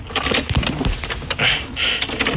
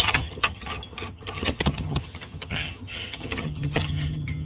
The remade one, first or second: second